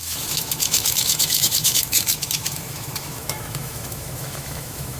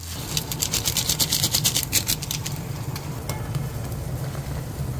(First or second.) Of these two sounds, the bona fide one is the second